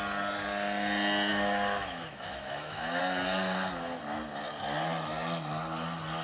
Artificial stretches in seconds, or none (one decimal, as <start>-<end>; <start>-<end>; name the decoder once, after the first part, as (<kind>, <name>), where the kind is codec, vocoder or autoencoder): 1.3-3.0 (autoencoder, DAC-VAE)

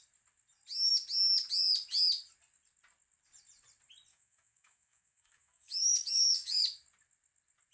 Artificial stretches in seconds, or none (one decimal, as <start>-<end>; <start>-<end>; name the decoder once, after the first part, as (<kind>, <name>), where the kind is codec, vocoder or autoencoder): 4.1-6.6 (autoencoder, DAC-VAE)

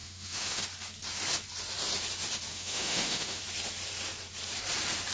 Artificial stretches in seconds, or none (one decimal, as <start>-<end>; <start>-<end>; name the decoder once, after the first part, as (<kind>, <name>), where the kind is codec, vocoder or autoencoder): 0.0-0.6 (autoencoder, DAC-VAE); 2.5-3.4

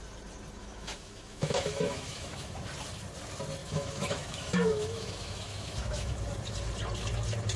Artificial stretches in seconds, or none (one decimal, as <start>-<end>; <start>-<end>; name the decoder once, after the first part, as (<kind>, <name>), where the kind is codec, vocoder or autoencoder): 0.6-2.6 (autoencoder, DAC-VAE); 3.6-6.2

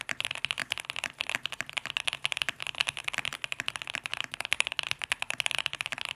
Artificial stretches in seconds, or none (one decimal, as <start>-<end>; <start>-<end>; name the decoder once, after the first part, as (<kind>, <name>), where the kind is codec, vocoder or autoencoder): none